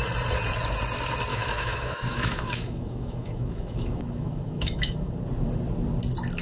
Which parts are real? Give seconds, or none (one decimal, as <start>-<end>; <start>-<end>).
0.0-1.3; 5.1-6.4